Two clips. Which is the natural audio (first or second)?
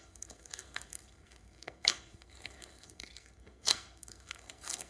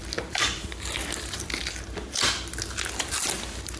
second